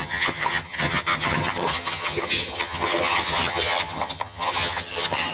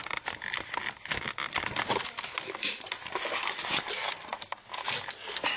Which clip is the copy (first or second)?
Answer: first